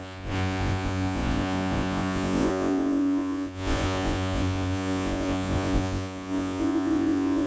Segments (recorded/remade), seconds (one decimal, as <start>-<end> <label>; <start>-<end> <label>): 0.0-7.5 remade